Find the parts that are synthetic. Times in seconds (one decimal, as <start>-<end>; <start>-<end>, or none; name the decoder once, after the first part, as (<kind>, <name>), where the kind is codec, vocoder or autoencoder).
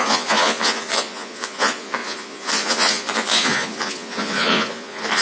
0.0-5.2 (vocoder, Vocos)